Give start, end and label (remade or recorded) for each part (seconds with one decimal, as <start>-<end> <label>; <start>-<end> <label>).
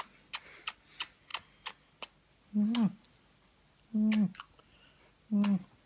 0.0-5.9 recorded